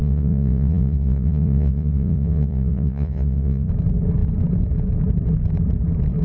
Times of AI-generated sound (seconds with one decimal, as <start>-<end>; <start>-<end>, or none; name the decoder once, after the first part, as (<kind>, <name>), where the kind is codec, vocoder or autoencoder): 0.0-3.7 (vocoder, Vocos)